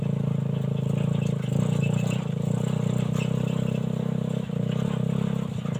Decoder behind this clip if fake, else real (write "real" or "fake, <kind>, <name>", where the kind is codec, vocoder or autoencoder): real